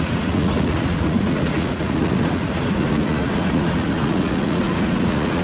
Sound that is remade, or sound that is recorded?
remade